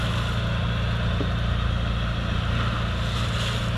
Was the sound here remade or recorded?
recorded